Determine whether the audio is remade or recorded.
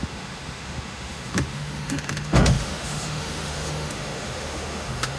remade